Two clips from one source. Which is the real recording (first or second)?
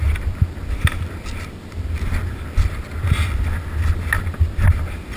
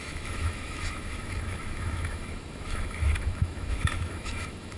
first